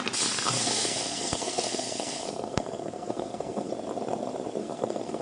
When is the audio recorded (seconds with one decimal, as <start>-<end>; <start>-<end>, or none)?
0.0-0.6; 3.7-4.6